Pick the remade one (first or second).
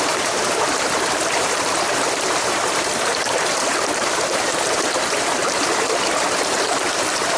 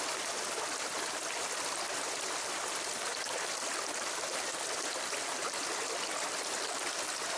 first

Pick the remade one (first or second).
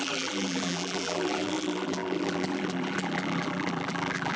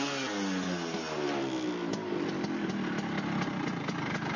first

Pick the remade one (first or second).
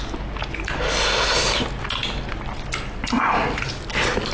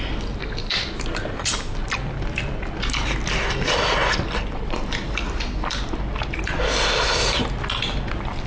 second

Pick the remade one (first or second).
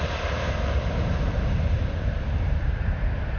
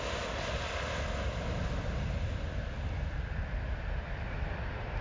first